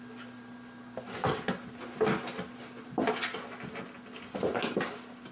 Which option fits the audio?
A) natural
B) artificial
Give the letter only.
A